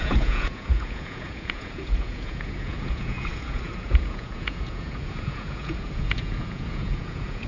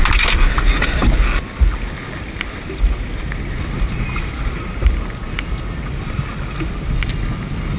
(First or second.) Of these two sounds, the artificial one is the first